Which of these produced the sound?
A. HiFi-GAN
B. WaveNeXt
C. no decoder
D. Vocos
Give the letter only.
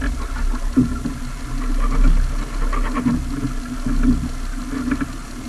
C